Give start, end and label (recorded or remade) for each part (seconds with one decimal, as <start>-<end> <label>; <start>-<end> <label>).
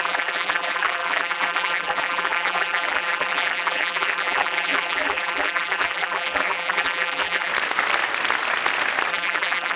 0.0-7.5 remade; 7.5-9.1 recorded; 9.1-9.8 remade